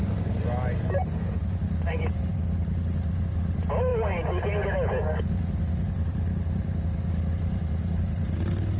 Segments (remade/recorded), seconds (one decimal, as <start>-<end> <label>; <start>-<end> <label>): 0.0-8.8 recorded